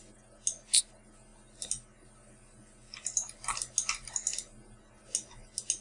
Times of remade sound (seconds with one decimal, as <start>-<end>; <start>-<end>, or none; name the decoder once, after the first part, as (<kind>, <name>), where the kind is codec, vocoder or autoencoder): none